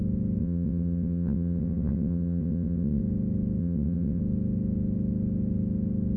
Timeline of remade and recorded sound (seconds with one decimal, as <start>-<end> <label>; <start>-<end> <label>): 0.0-0.4 recorded; 0.4-3.0 remade; 3.0-3.6 recorded; 3.6-4.2 remade; 4.2-6.2 recorded

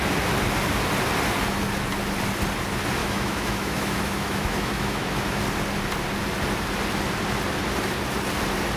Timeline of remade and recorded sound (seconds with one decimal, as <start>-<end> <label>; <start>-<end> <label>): 0.0-3.0 recorded; 3.0-5.4 remade; 5.4-8.8 recorded

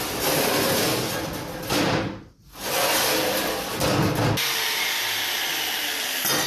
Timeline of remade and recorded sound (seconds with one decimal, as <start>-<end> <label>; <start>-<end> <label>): 0.0-6.5 recorded

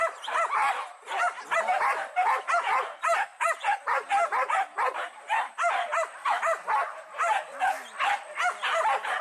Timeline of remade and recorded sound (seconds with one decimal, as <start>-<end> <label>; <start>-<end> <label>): 0.0-5.9 remade; 5.9-9.2 recorded

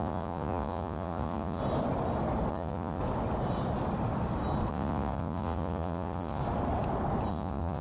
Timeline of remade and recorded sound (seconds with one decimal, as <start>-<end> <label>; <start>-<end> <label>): 0.0-1.6 remade; 1.6-2.5 recorded; 2.5-3.0 remade; 3.0-4.7 recorded; 4.7-6.4 remade; 6.4-7.3 recorded; 7.3-7.8 remade

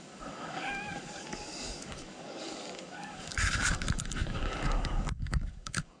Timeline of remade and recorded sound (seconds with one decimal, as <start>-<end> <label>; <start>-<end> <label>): 0.0-6.0 remade

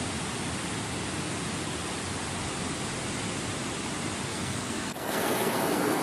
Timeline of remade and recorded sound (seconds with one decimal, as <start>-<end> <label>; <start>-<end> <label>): 0.0-4.3 recorded; 4.3-6.0 remade